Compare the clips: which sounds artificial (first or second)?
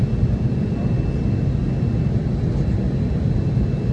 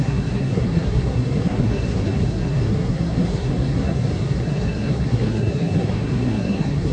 second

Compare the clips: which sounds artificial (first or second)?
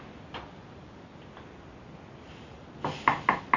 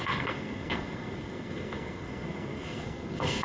second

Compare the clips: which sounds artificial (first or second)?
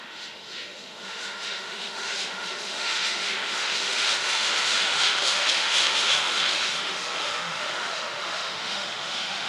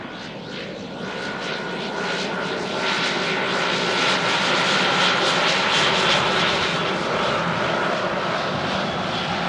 first